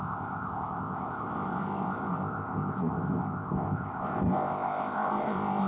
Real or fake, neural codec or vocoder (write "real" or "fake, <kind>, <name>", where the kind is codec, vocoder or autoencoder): fake, codec, ZipCodec